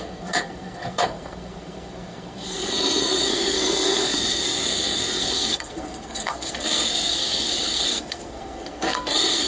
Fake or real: fake